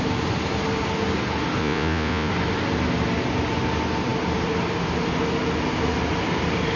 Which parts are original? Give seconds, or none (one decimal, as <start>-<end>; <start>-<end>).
0.0-1.6; 2.3-6.8